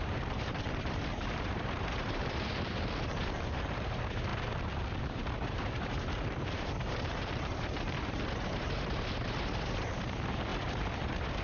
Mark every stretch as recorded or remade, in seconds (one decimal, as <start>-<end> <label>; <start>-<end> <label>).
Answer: 0.0-4.3 remade; 4.3-5.0 recorded; 5.0-11.4 remade